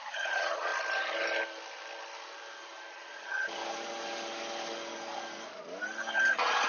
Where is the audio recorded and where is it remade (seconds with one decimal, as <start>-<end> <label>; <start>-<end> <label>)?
0.0-0.7 remade; 0.7-2.9 recorded; 2.9-3.6 remade; 3.6-6.3 recorded; 6.3-6.7 remade